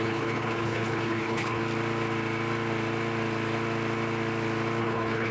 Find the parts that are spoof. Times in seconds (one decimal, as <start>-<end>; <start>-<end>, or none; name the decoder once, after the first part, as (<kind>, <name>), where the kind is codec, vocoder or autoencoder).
0.0-1.6 (codec, HILCodec); 4.8-5.3